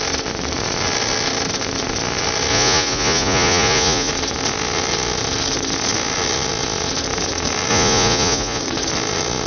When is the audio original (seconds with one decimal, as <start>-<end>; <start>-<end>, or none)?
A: 0.0-2.5; 4.1-7.7; 8.6-9.5

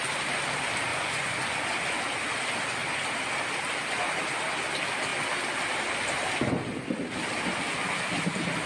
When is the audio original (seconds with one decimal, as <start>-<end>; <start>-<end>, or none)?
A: 0.0-0.9; 2.0-8.7

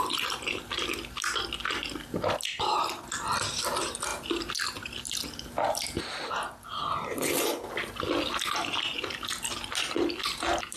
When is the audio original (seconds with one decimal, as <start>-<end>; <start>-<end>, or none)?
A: 0.0-10.8

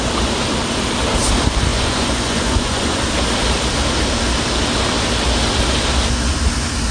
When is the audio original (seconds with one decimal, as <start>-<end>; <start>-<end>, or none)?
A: 0.0-1.7; 3.0-6.9